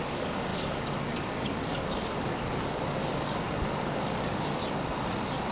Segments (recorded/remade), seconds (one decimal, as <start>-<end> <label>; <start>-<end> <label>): 0.0-4.6 remade; 4.6-5.5 recorded